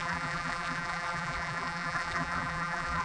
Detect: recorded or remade remade